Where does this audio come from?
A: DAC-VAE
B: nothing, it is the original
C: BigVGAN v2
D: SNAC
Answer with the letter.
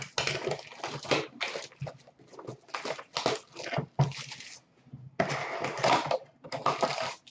B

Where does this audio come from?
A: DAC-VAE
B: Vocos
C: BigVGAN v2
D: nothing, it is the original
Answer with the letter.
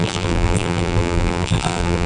C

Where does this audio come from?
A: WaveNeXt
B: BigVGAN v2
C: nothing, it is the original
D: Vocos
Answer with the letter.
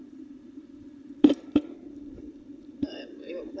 B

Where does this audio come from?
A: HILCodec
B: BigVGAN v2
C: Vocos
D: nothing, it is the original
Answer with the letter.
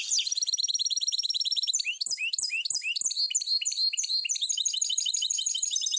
B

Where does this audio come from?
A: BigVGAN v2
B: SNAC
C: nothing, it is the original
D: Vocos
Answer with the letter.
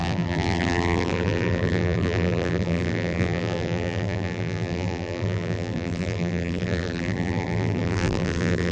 A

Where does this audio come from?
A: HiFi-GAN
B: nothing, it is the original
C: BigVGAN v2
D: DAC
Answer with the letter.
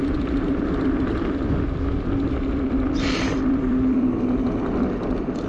C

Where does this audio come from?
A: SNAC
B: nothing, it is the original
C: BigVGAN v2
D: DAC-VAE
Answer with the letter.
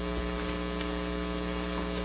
B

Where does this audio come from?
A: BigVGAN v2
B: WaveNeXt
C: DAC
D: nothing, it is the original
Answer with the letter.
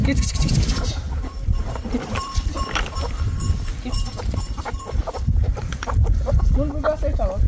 A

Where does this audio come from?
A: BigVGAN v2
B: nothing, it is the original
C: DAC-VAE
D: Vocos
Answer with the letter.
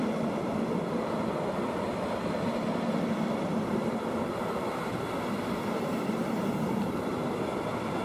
A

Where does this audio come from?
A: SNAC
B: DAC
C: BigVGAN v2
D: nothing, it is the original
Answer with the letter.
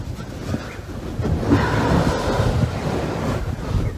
D